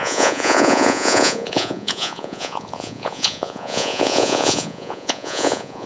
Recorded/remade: remade